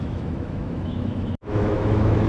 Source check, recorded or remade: remade